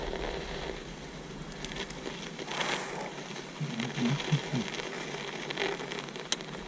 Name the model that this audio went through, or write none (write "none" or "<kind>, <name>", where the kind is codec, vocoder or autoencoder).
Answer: none